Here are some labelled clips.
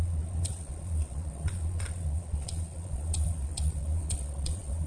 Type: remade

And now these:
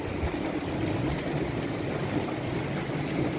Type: recorded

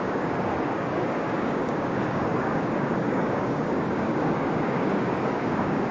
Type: remade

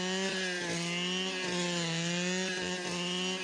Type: recorded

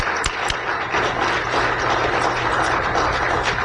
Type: recorded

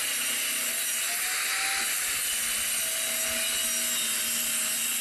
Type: recorded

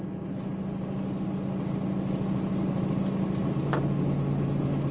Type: recorded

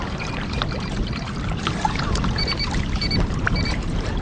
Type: remade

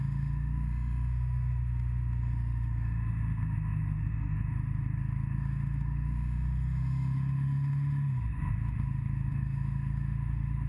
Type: remade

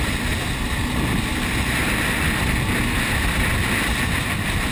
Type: recorded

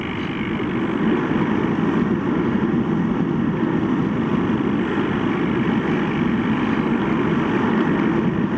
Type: recorded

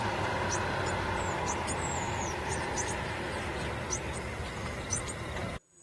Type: remade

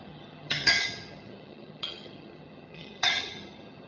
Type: remade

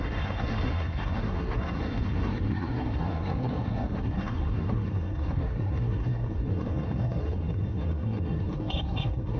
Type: remade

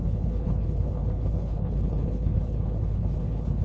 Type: remade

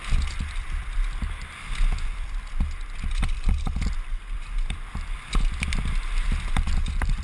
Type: remade